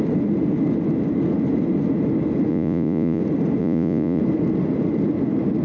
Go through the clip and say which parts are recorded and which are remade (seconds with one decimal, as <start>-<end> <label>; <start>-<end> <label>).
0.0-2.5 recorded; 2.5-3.2 remade; 3.2-3.6 recorded; 3.6-4.2 remade; 4.2-5.6 recorded